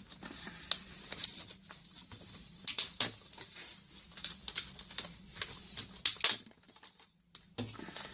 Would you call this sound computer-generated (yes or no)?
no